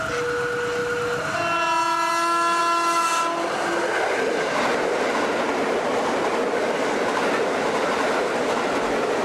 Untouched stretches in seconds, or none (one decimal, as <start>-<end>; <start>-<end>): 0.0-9.2